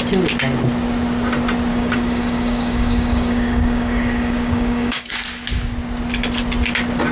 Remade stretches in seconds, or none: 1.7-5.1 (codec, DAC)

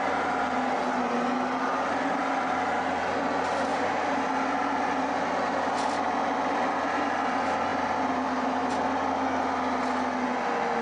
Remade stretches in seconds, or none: 3.7-4.2 (vocoder, BigVGAN v2); 7.7-8.7

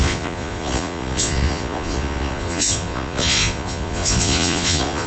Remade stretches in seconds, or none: 0.0-5.1 (vocoder, Vocos)

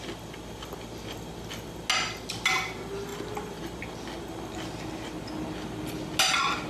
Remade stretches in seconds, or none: none